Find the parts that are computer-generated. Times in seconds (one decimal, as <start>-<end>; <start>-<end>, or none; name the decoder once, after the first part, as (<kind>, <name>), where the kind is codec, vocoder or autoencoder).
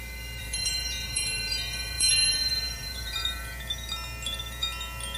0.4-3.5 (vocoder, BigVGAN v2)